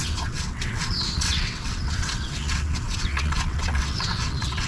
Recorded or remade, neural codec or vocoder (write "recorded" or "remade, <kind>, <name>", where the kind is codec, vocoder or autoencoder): remade, vocoder, WaveNeXt